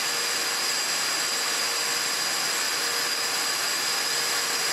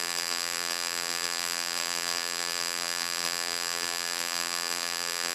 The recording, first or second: first